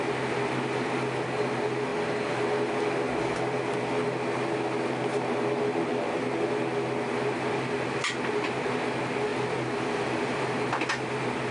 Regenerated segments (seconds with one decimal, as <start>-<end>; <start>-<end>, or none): 9.3-10.6

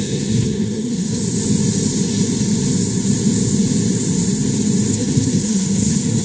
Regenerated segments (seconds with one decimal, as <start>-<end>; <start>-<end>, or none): 0.0-1.2; 4.9-6.2

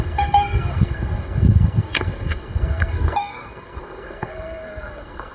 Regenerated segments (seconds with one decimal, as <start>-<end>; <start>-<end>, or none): 0.0-5.3

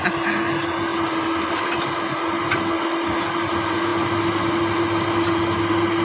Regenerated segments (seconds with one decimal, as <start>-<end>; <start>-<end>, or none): none

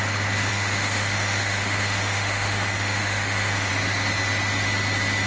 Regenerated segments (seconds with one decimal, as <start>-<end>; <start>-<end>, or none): 0.5-3.7

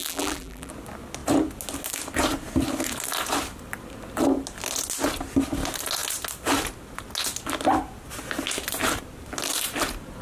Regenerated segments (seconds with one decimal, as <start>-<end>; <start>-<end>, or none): 0.0-0.7